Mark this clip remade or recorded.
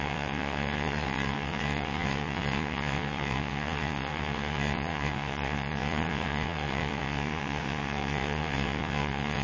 remade